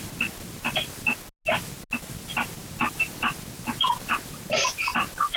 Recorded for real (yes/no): yes